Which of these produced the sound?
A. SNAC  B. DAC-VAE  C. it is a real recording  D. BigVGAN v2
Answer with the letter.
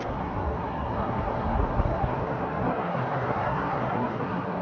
A